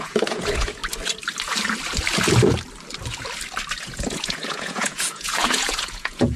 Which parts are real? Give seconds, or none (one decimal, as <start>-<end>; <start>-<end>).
0.8-3.8